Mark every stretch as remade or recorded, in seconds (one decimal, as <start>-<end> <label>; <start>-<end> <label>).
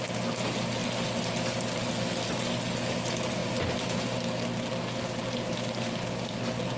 0.0-6.8 recorded